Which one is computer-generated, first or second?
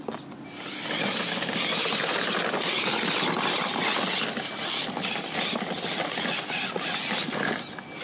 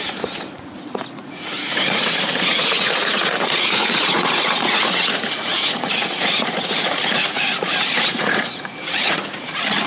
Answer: second